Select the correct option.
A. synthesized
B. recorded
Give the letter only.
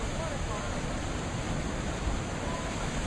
B